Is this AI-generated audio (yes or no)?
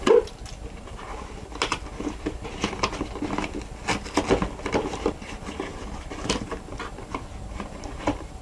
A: no